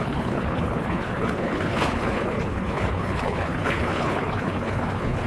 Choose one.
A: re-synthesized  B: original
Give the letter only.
A